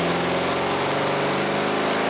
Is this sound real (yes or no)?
yes